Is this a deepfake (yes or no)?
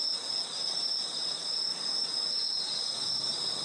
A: no